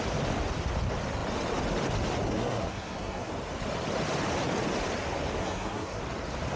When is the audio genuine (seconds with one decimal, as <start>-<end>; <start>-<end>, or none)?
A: 0.0-2.3; 3.3-5.4; 6.0-6.6